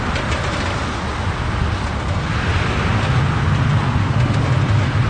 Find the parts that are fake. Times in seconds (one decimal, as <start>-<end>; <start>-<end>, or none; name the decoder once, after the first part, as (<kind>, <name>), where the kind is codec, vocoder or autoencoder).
4.0-4.5 (autoencoder, DAC-VAE)